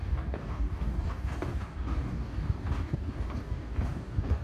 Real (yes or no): no